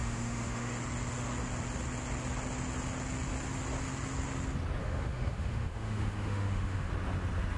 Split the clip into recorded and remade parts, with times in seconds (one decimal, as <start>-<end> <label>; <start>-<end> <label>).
0.0-0.7 remade; 0.7-4.8 recorded; 4.8-6.9 remade; 6.9-7.6 recorded